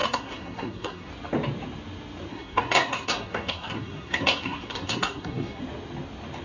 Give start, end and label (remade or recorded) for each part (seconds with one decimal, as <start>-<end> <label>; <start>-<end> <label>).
0.0-1.1 remade; 1.1-2.3 recorded; 2.3-5.6 remade; 5.6-6.4 recorded